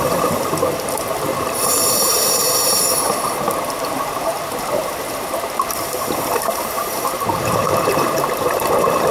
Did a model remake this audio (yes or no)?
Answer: yes